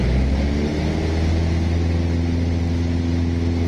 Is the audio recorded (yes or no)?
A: yes